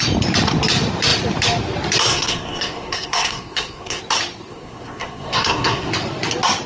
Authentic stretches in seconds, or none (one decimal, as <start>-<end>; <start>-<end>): 0.0-2.1; 4.0-4.5; 5.9-6.7